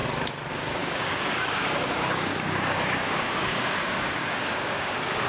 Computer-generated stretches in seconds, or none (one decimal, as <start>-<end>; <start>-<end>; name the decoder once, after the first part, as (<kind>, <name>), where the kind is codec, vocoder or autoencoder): 0.5-5.3 (codec, DAC)